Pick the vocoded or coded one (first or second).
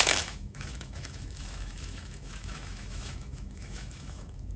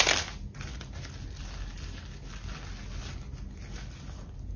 first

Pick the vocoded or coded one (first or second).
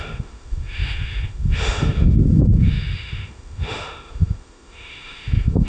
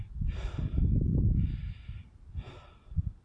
first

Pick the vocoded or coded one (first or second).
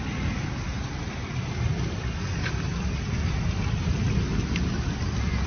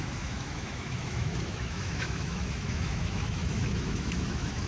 second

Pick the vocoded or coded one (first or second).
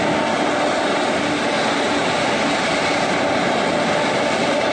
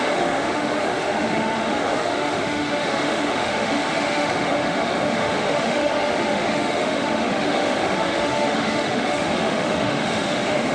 second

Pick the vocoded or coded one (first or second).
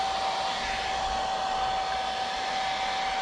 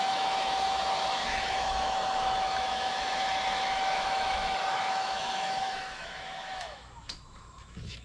second